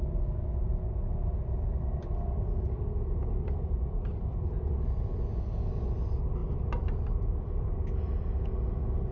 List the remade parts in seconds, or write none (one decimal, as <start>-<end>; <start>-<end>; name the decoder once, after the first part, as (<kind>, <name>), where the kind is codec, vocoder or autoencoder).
1.3-4.5 (vocoder, BigVGAN v2); 6.4-7.7